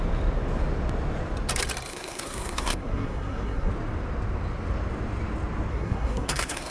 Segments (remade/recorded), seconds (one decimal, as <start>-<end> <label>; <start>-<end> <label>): 0.0-1.9 recorded; 1.9-3.7 remade; 3.7-5.7 recorded; 5.7-6.7 remade